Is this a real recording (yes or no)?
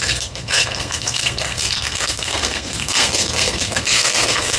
no